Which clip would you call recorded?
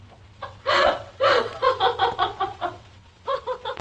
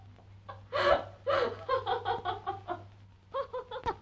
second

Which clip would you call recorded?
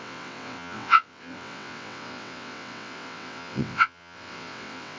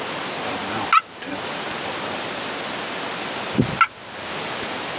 second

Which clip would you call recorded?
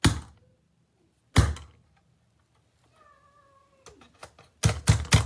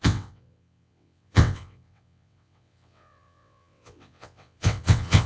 first